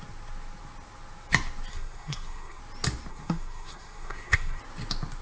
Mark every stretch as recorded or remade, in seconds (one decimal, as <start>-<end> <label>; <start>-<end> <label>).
0.0-1.7 recorded; 1.7-2.6 remade; 2.6-3.1 recorded; 3.1-4.6 remade; 4.6-5.2 recorded

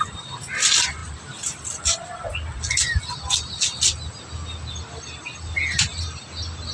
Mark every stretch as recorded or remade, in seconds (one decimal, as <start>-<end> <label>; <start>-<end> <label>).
0.0-6.7 recorded

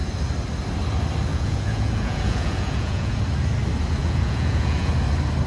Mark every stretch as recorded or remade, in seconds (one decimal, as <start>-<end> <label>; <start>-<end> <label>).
0.0-1.3 recorded; 1.3-3.2 remade; 3.2-4.0 recorded; 4.0-4.9 remade; 4.9-5.5 recorded